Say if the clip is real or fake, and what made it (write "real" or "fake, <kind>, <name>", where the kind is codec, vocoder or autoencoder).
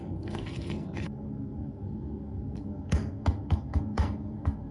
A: fake, codec, SNAC